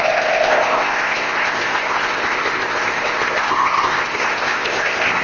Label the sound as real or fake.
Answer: fake